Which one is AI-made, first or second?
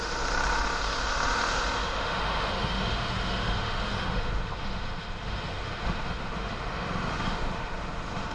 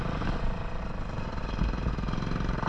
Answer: first